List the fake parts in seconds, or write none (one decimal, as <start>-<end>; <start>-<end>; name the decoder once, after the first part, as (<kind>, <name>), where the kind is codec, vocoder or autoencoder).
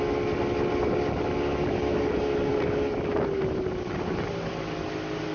none